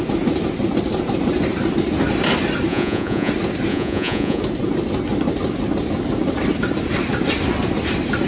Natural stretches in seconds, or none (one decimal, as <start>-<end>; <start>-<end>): 0.0-2.7; 3.3-3.7; 4.4-8.3